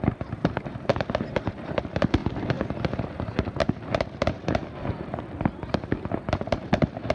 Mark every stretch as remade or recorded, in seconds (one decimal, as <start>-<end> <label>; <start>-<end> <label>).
0.0-4.6 remade; 4.6-5.7 recorded; 5.7-7.1 remade